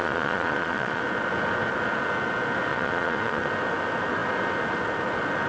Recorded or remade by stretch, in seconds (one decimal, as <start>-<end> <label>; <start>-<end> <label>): 0.0-1.0 remade; 1.0-2.7 recorded; 2.7-3.5 remade; 3.5-5.5 recorded